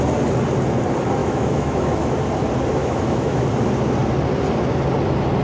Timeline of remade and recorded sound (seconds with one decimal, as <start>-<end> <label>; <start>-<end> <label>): 0.0-1.2 recorded; 1.2-2.1 remade; 2.1-2.8 recorded; 2.8-3.4 remade; 3.4-5.4 recorded